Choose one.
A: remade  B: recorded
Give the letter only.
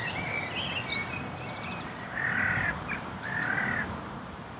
B